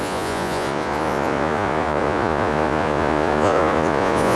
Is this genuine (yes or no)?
no